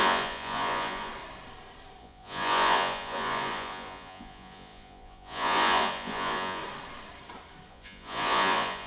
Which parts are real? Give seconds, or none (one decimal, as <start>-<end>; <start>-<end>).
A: 1.1-2.0; 6.6-7.7